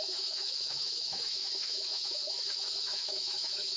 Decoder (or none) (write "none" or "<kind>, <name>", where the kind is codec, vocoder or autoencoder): autoencoder, DAC-VAE